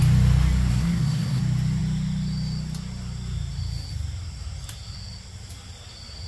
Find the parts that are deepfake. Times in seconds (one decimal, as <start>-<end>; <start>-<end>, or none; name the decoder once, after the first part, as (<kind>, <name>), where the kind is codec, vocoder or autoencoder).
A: 0.7-1.4 (codec, SNAC)